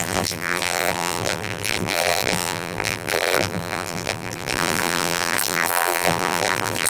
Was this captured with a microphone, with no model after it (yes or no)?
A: no